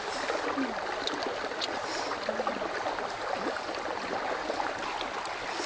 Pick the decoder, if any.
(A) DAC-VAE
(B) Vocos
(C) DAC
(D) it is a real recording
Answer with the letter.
D